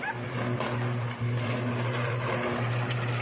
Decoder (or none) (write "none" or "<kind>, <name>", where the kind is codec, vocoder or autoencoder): none